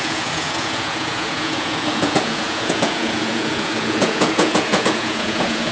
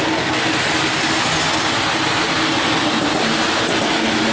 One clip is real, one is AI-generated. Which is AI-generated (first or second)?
first